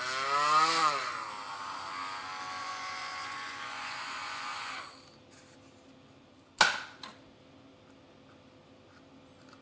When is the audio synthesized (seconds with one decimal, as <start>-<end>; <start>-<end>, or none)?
0.8-1.3; 2.6-4.8